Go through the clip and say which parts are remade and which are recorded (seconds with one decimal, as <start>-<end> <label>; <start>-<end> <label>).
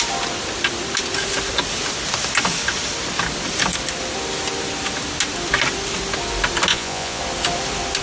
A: 0.0-6.7 recorded; 6.7-7.2 remade; 7.2-8.0 recorded